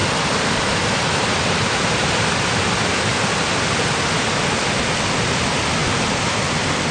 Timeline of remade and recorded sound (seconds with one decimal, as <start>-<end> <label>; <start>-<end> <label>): 0.0-6.9 recorded